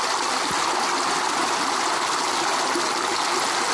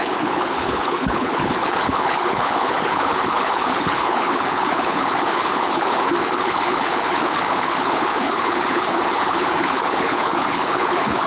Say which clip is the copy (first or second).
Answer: second